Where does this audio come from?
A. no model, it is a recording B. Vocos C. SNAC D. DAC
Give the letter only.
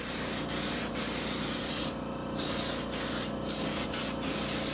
A